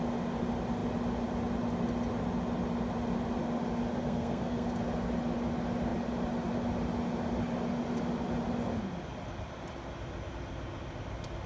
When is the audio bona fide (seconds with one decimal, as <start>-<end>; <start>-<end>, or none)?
0.0-4.0; 4.8-11.5